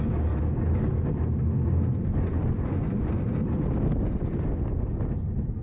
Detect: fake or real fake